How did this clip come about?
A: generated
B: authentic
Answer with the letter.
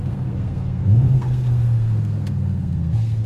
A